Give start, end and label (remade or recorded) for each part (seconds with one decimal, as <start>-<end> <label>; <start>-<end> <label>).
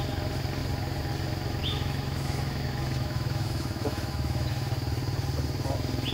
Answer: 0.0-1.6 recorded; 1.6-4.7 remade; 4.7-6.1 recorded